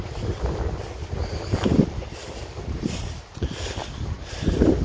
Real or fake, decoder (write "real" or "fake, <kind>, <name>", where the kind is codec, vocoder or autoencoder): real